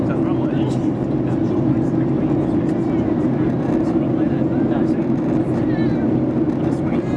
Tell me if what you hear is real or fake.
real